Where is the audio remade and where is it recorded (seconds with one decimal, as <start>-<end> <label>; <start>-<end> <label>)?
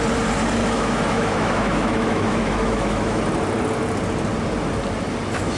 0.0-0.6 recorded; 0.6-3.2 remade; 3.2-5.6 recorded